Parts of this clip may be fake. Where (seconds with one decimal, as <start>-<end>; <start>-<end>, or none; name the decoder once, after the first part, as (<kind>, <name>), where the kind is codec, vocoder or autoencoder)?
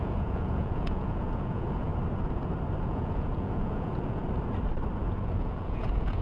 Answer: 0.0-1.9 (vocoder, Vocos); 2.8-4.2; 5.0-6.2